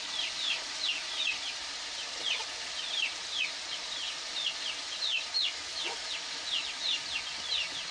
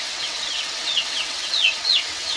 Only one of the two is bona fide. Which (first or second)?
first